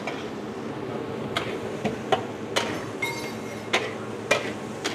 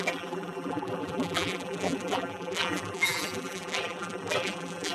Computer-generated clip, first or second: second